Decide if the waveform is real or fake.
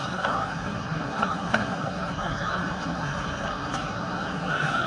fake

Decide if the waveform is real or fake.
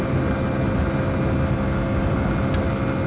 real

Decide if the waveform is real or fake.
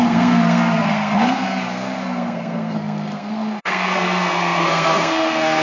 fake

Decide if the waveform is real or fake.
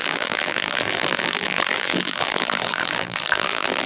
fake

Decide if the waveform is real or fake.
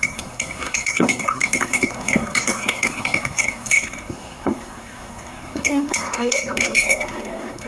fake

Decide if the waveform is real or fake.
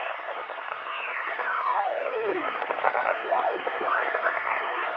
fake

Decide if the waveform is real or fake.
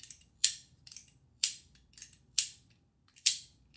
fake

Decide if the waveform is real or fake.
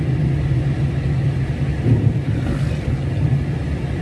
real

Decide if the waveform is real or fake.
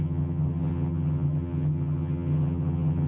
fake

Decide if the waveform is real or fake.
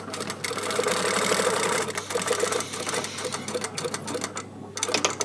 real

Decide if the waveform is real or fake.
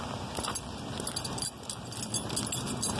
real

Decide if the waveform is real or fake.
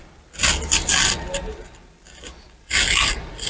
real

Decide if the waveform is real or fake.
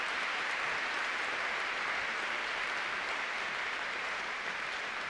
fake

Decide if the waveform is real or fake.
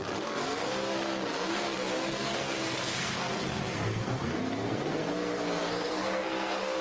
fake